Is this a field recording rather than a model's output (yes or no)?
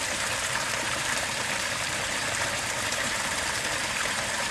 no